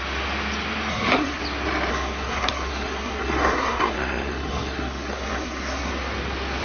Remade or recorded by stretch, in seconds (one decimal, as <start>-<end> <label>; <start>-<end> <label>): 0.0-0.9 recorded; 0.9-1.4 remade; 1.4-1.9 recorded; 1.9-5.9 remade; 5.9-6.6 recorded